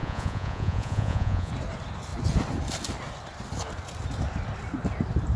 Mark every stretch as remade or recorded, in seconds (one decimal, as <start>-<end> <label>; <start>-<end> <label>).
0.0-1.5 remade; 1.5-5.4 recorded